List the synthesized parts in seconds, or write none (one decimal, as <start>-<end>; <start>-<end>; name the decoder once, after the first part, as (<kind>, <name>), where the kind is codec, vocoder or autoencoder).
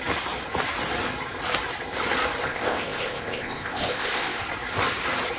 2.5-4.4 (codec, ZipCodec)